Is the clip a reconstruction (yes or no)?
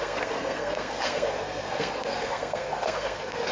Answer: yes